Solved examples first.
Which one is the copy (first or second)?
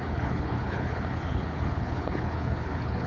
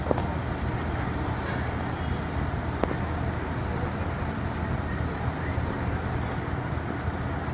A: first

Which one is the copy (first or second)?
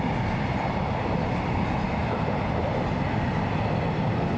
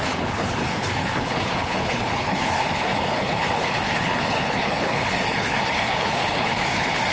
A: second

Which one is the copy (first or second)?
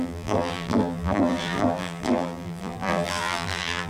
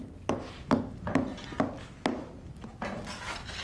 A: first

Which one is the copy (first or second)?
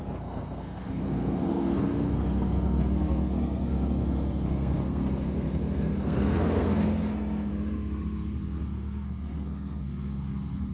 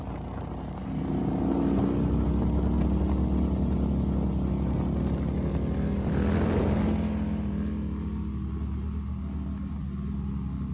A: first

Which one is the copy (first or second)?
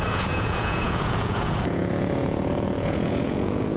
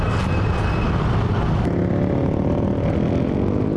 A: first